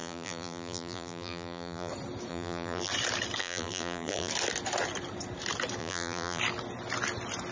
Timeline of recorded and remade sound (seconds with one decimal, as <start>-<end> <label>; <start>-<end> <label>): 0.0-1.9 remade; 1.9-2.3 recorded; 2.3-2.9 remade; 2.9-3.4 recorded; 3.4-4.3 remade; 4.3-5.8 recorded; 5.8-6.4 remade; 6.4-7.5 recorded